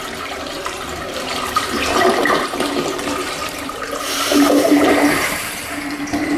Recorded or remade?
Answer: remade